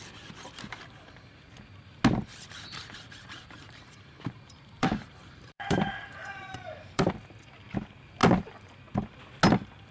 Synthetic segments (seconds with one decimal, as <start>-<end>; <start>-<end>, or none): 2.3-7.1